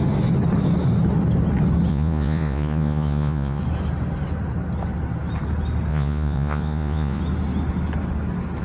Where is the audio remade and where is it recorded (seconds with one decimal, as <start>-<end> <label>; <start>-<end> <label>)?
0.0-1.9 recorded; 1.9-3.6 remade; 3.6-5.9 recorded; 5.9-7.2 remade; 7.2-8.6 recorded